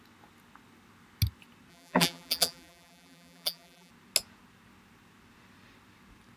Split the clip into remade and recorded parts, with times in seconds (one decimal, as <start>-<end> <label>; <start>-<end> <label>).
0.0-1.7 recorded; 1.7-3.9 remade; 3.9-6.4 recorded